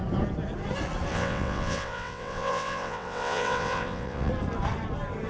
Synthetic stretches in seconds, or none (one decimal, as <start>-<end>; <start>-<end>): 1.1-4.3